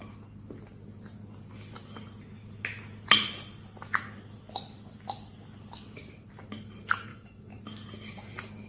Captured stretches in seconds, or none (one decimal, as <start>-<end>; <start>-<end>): 0.0-7.1; 7.6-8.7